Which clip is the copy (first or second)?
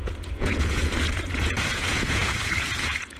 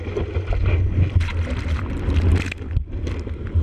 first